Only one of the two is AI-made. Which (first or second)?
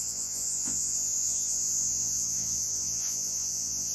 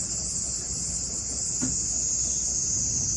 first